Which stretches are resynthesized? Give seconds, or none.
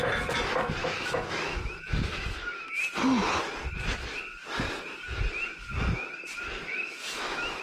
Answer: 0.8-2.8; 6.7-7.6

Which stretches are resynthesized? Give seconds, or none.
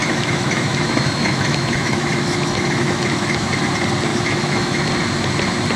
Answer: 0.0-3.5; 4.1-4.9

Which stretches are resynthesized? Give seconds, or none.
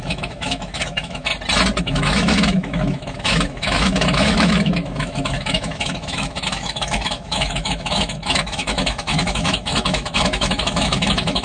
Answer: 0.0-1.3; 1.8-11.4